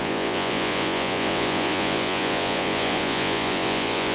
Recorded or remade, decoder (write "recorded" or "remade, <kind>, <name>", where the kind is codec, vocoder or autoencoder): remade, vocoder, Vocos